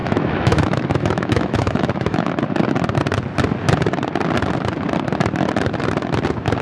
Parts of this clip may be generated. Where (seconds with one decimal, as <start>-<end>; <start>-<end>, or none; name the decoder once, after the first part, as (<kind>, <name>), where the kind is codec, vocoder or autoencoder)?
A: 0.0-2.3 (autoencoder, DAC-VAE)